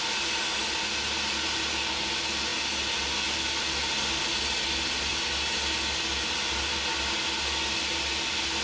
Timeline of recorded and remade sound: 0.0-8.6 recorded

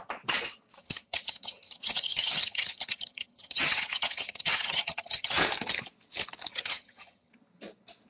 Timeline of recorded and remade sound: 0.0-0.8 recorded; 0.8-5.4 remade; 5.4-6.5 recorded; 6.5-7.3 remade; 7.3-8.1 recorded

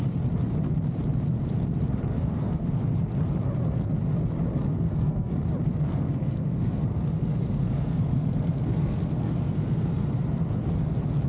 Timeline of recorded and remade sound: 0.0-2.1 recorded; 2.1-2.8 remade; 2.8-4.5 recorded; 4.5-5.4 remade; 5.4-5.9 recorded; 5.9-10.2 remade; 10.2-11.3 recorded

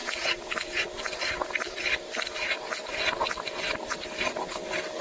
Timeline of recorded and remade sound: 0.0-0.8 remade; 0.8-5.0 recorded

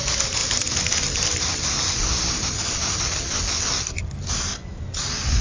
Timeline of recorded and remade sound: 0.0-5.4 recorded